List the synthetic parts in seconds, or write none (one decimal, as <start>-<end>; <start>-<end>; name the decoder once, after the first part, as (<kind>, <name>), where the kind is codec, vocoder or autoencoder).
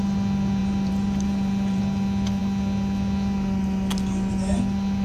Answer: 0.6-1.8 (vocoder, BigVGAN v2)